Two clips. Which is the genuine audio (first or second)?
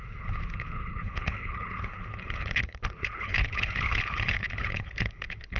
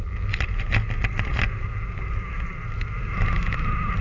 second